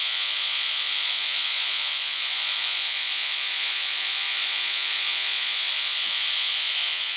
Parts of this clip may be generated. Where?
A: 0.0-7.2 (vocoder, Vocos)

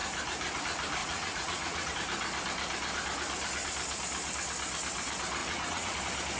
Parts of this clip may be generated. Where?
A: 1.0-1.9 (vocoder, Vocos); 5.4-6.0

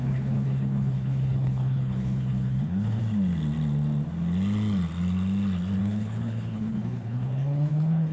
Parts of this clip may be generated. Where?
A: 0.0-3.0 (codec, HILCodec); 5.8-8.1

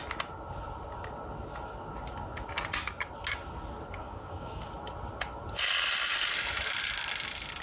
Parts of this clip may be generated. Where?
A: 4.0-4.6 (codec, DAC)

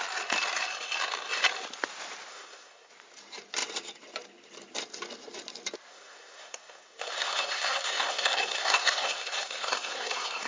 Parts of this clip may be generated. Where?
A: 2.3-2.9 (codec, SNAC); 5.9-10.5

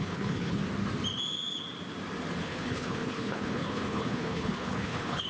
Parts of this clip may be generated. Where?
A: 0.0-0.6 (codec, HILCodec); 2.4-5.3